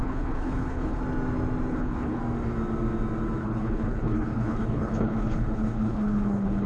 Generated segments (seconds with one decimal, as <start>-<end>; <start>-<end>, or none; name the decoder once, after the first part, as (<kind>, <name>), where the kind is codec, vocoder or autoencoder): 0.0-1.0 (codec, HILCodec); 1.7-2.2; 3.4-6.7